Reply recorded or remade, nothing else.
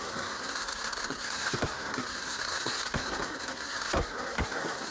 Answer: remade